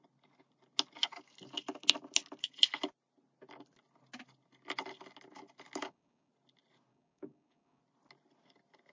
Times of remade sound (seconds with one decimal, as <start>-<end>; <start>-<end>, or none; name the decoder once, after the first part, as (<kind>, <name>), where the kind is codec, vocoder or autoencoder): 5.8-6.3 (codec, DAC); 6.9-7.8